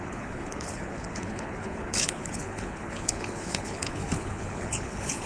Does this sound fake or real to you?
fake